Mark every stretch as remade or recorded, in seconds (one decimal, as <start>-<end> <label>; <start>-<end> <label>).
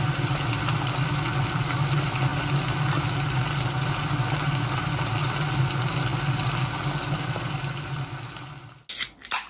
0.0-9.5 recorded